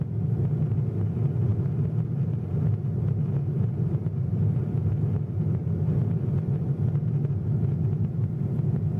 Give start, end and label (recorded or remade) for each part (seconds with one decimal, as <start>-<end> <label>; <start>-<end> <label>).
0.0-9.0 recorded